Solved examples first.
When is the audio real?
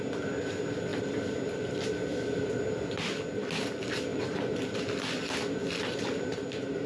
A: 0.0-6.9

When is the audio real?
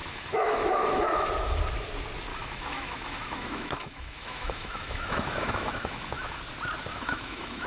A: 1.3-2.3; 6.4-6.9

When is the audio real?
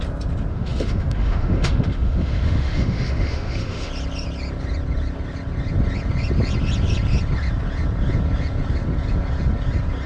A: 0.0-0.5; 3.9-10.1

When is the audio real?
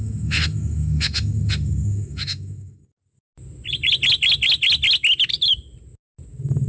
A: 2.8-6.7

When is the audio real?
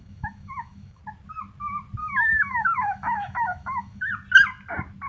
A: 1.0-2.0; 4.1-5.1